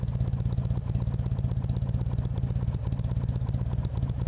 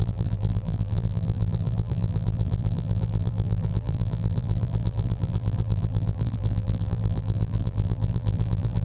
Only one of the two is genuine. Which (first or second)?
first